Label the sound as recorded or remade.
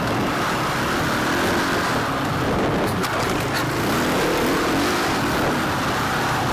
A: recorded